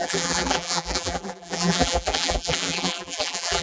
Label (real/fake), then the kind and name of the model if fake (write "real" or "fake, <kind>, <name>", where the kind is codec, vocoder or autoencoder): fake, vocoder, BigVGAN v2